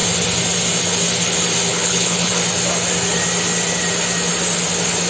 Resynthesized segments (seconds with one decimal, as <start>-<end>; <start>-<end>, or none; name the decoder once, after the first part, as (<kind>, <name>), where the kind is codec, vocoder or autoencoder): 1.7-2.3 (codec, HILCodec)